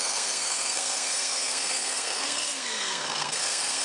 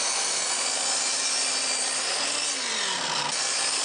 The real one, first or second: second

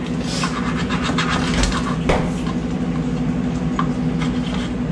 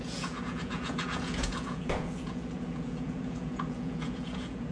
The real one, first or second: first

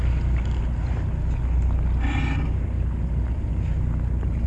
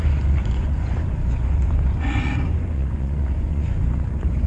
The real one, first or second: first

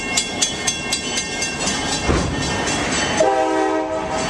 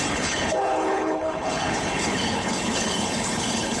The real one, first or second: first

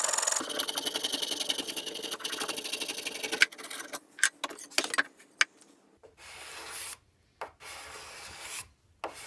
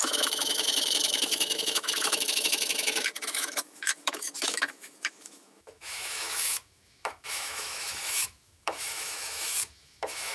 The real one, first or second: first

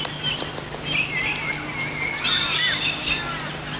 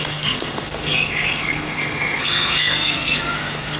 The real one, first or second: first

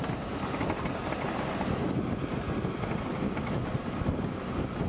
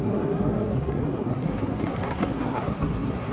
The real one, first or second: first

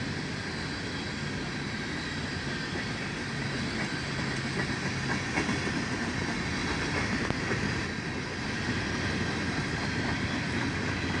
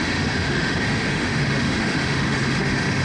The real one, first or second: first